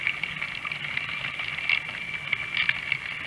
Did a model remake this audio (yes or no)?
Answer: no